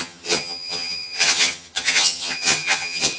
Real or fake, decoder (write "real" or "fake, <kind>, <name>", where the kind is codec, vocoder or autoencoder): fake, vocoder, HiFi-GAN